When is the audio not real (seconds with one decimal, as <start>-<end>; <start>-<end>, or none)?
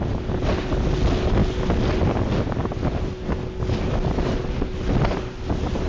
none